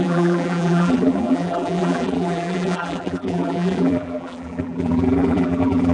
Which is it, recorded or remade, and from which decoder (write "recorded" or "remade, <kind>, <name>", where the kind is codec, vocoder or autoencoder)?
remade, vocoder, BigVGAN v2